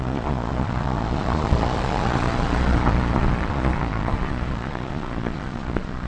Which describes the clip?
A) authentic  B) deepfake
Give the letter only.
B